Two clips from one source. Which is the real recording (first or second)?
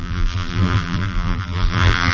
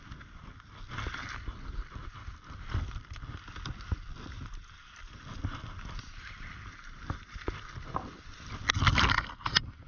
second